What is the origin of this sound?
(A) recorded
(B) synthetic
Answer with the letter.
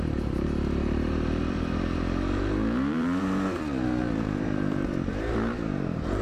B